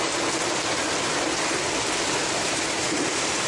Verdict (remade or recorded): recorded